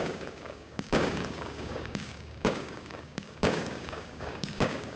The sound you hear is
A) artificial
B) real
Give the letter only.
A